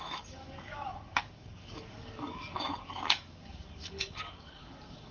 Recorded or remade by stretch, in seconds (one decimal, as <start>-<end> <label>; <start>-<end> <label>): 0.0-5.1 remade